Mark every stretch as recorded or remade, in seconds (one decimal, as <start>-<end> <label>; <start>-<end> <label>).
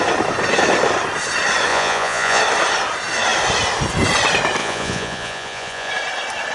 0.0-1.7 recorded; 1.7-2.4 remade; 2.4-4.6 recorded; 4.6-5.9 remade; 5.9-6.5 recorded